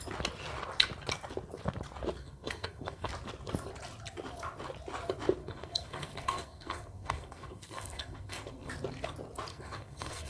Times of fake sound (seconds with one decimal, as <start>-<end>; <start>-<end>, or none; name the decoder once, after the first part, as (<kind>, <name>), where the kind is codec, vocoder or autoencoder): 2.2-3.1 (codec, SNAC); 5.4-8.7; 9.5-10.3